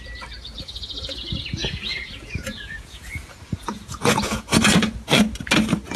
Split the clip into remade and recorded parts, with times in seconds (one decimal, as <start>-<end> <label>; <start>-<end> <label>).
0.0-1.6 recorded; 1.6-4.9 remade; 4.9-6.0 recorded